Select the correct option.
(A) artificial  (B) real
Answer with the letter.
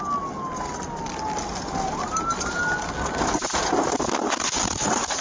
B